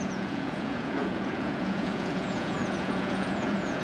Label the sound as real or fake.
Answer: fake